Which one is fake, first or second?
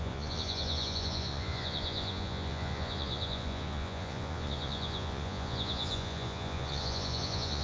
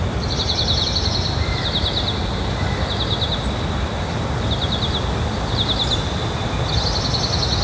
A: first